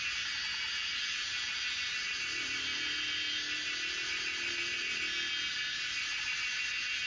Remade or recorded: recorded